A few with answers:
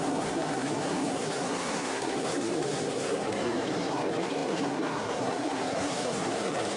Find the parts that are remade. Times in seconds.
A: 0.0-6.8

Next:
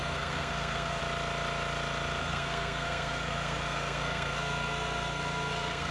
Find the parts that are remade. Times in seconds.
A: 0.0-1.0; 2.2-5.9

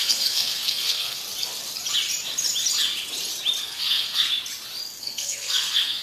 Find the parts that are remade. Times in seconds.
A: 0.0-1.2; 3.6-4.3; 5.0-6.0

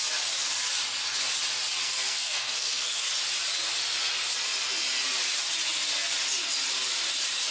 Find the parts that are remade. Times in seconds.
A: 1.8-3.0

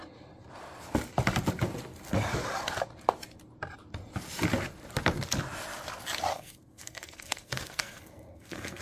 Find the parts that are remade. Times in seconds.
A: 6.3-8.8

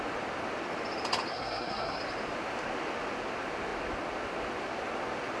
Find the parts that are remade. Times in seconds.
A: 1.3-2.0

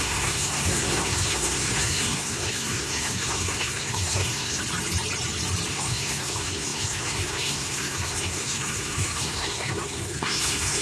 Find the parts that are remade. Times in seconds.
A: 0.0-4.6; 5.7-10.8